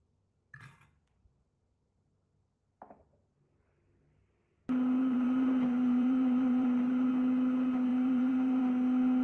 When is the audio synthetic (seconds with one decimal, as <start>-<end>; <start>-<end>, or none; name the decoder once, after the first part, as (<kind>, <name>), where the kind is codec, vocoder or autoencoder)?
5.0-7.1 (vocoder, BigVGAN v2); 7.9-8.6